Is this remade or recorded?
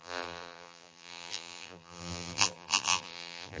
remade